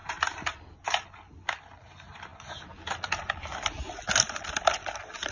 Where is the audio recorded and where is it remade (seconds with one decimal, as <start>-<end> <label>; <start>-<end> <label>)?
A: 0.0-5.3 recorded